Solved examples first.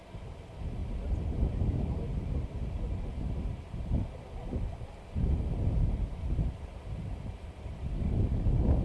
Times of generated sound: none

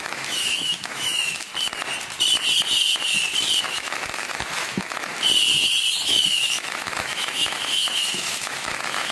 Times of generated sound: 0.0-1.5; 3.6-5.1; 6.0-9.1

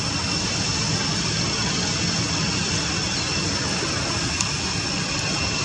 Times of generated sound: none

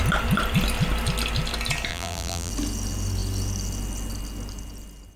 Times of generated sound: 1.9-2.5

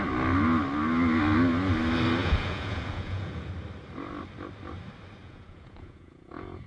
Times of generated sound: 2.2-3.5; 5.2-6.7

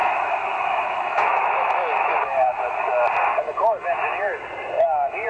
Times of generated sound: 0.0-2.6

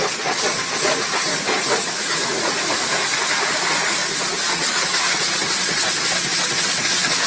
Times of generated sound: 0.8-4.0; 4.5-5.4